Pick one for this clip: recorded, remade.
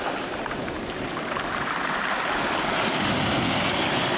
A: recorded